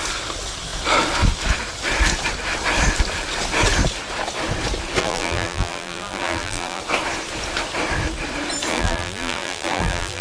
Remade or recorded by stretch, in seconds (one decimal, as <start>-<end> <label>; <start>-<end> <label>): 0.0-5.0 recorded; 5.0-6.8 remade; 6.8-8.7 recorded; 8.7-10.2 remade